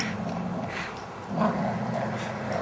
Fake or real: real